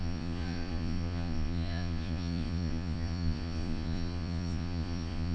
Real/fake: fake